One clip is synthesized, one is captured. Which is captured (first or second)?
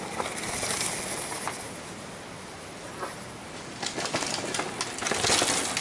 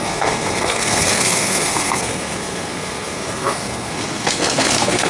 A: first